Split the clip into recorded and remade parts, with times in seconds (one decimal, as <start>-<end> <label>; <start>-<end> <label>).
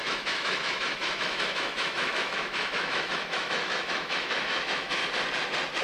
0.0-5.0 remade; 5.0-5.8 recorded